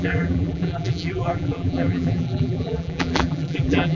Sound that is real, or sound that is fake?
fake